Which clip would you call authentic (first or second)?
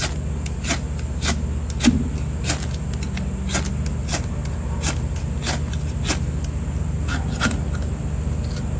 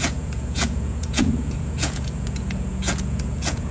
first